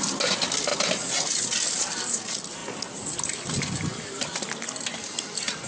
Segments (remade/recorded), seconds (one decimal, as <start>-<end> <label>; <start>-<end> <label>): 0.0-5.7 recorded

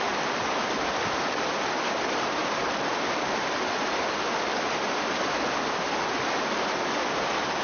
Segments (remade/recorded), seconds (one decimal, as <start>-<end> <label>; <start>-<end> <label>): 0.0-7.6 recorded

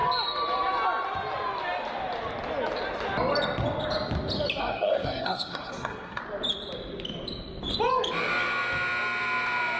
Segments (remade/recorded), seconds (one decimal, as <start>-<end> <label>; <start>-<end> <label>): 0.0-4.6 recorded; 4.6-6.2 remade; 6.2-9.8 recorded